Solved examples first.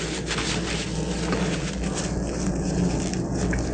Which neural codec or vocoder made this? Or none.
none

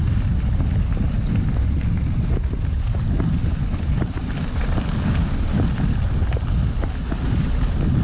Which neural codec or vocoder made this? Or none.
none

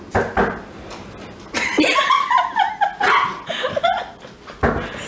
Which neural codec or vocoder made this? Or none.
none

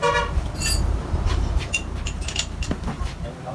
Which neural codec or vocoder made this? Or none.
none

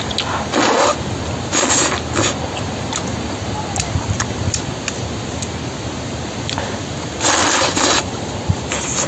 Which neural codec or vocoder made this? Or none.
none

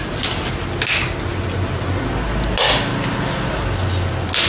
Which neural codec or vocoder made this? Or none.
none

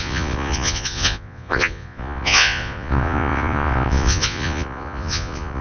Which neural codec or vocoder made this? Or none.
vocoder, Vocos